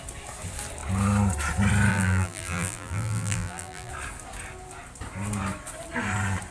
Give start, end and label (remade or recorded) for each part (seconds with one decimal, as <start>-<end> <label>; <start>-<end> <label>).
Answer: 0.0-1.9 recorded; 1.9-3.9 remade; 3.9-6.5 recorded